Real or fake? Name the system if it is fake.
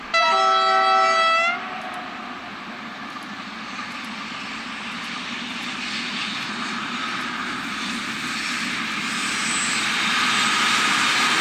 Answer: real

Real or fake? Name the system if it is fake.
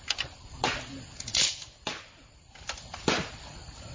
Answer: real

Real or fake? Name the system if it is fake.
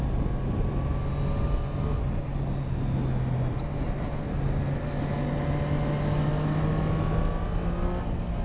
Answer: real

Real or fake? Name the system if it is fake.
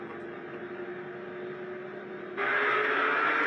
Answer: real